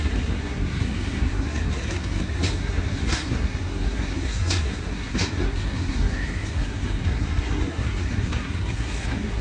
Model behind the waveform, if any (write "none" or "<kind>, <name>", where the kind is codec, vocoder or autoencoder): codec, SNAC